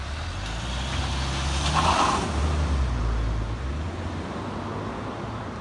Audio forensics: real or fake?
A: real